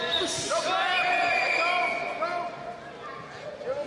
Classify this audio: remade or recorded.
recorded